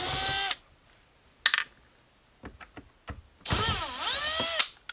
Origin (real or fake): real